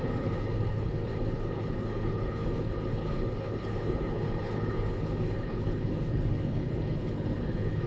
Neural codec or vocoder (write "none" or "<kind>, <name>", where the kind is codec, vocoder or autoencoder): codec, HILCodec